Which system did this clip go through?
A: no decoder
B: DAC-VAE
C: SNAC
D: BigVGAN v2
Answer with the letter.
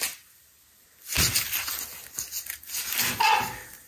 A